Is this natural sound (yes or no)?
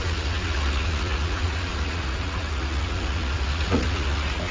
no